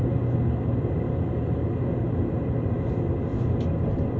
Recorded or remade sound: recorded